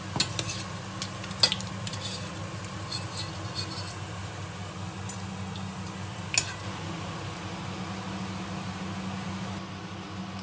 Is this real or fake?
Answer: real